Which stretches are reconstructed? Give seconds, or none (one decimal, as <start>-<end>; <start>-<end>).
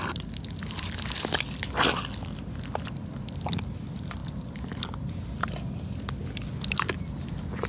none